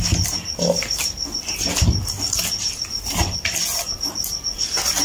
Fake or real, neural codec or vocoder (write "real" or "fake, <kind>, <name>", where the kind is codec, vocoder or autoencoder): real